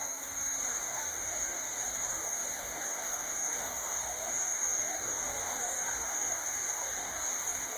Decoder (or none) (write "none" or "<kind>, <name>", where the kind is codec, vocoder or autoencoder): codec, DAC